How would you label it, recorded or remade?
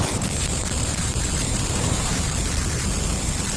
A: recorded